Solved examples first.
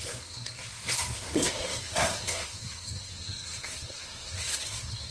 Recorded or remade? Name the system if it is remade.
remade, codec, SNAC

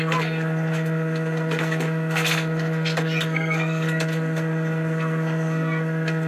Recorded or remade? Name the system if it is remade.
remade, codec, SNAC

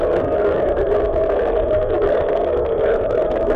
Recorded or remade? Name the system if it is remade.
remade, codec, SNAC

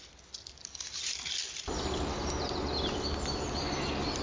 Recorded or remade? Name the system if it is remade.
recorded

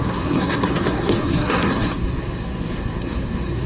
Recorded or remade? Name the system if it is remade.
remade, codec, SNAC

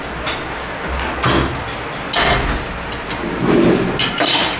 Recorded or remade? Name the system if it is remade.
recorded